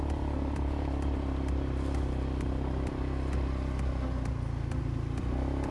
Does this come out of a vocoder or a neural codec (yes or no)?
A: no